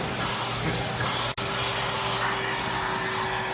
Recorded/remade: recorded